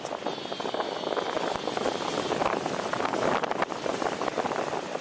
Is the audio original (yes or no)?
yes